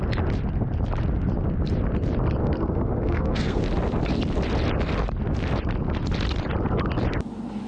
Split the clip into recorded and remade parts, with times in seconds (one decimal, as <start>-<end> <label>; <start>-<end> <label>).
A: 0.0-2.4 recorded; 2.4-3.6 remade; 3.6-7.7 recorded